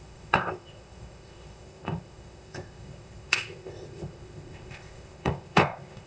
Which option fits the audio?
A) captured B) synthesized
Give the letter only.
B